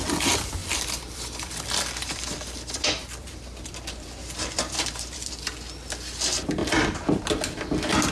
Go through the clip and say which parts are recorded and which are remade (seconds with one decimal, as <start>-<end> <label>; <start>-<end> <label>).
0.0-0.6 recorded; 0.6-5.5 remade; 5.5-8.1 recorded

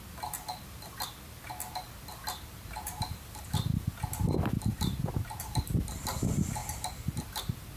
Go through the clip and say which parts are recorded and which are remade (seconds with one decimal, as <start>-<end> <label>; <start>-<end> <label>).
0.0-4.7 recorded; 4.7-5.4 remade; 5.4-7.8 recorded

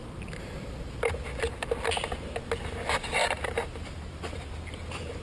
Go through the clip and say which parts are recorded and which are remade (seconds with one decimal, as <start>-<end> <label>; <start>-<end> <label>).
0.0-1.1 remade; 1.1-3.2 recorded; 3.2-4.5 remade; 4.5-5.2 recorded